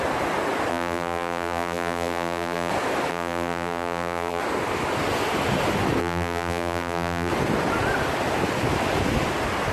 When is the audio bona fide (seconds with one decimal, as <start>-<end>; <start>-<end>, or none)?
0.0-0.7; 2.7-3.1; 4.4-6.0; 7.3-9.7